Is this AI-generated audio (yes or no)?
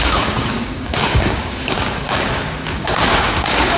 yes